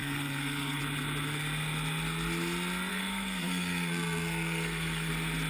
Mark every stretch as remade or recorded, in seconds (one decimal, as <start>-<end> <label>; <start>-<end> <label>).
0.0-0.8 remade; 0.8-2.9 recorded; 2.9-5.1 remade; 5.1-5.5 recorded